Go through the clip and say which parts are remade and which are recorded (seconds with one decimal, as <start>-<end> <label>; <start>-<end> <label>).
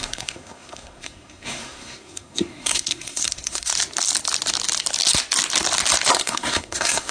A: 0.0-3.7 remade; 3.7-6.1 recorded; 6.1-7.1 remade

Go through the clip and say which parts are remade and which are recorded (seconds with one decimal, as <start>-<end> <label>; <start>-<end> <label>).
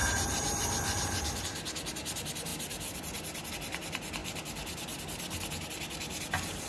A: 0.0-6.7 recorded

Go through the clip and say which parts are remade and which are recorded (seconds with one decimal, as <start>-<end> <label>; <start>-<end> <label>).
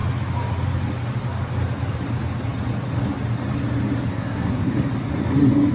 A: 0.0-4.1 recorded; 4.1-4.7 remade; 4.7-5.7 recorded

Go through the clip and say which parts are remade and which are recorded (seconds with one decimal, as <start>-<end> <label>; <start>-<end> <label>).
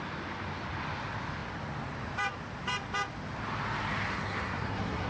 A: 0.0-4.1 recorded; 4.1-5.1 remade